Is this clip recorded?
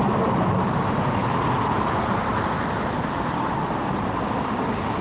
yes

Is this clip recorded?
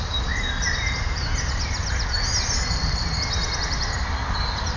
yes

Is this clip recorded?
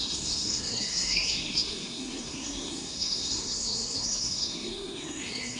no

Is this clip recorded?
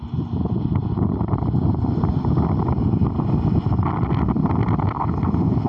yes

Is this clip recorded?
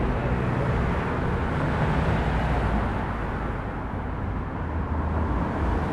yes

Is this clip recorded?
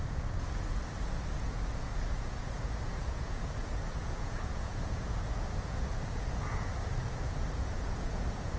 no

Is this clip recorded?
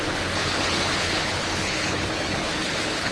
no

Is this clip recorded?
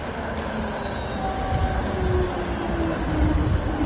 yes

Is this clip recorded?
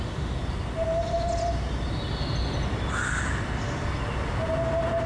yes